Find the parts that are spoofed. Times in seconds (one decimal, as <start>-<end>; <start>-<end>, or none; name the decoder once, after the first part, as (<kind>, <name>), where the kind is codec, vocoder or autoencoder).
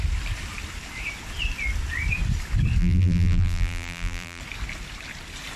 2.8-4.4 (vocoder, BigVGAN v2)